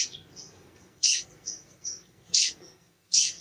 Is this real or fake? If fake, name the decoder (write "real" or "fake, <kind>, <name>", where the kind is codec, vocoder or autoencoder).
fake, codec, SNAC